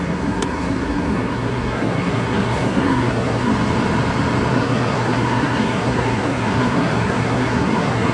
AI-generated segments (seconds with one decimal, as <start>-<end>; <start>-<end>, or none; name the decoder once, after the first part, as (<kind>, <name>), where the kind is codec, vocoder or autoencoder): 0.0-3.5 (codec, SNAC); 4.5-8.1